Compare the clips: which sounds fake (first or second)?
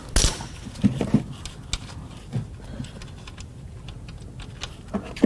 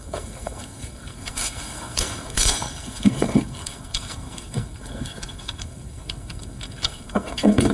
second